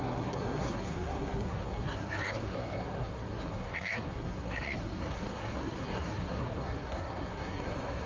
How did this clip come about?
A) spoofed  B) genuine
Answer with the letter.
A